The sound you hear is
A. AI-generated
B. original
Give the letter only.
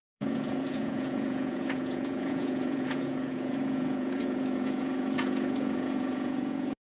A